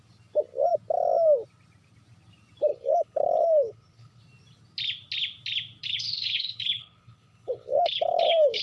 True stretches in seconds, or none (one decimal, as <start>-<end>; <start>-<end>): 0.0-2.7; 4.2-5.8